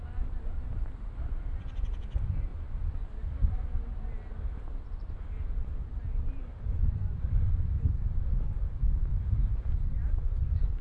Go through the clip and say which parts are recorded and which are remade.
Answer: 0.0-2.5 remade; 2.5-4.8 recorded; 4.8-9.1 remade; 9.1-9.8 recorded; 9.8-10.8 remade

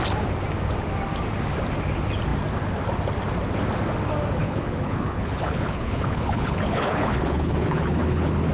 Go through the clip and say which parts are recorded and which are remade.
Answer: 0.0-4.4 recorded; 4.4-8.5 remade

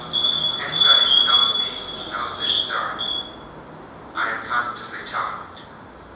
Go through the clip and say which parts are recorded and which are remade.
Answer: 0.0-6.2 recorded

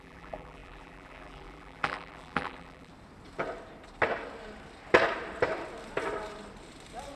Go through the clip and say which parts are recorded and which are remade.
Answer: 0.0-2.9 remade; 2.9-7.2 recorded

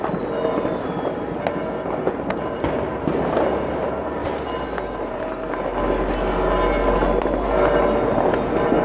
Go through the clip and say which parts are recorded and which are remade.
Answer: 0.0-8.8 recorded